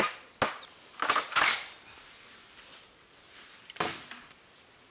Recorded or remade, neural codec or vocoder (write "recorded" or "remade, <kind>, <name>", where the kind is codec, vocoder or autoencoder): recorded